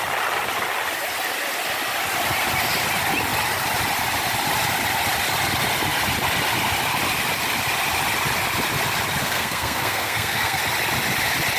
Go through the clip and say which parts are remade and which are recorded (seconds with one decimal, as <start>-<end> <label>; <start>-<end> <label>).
0.0-9.2 recorded; 9.2-10.6 remade; 10.6-11.6 recorded